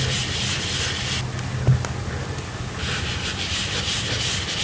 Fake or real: real